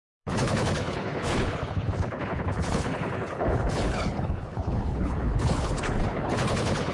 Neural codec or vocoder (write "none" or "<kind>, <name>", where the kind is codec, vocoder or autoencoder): codec, HILCodec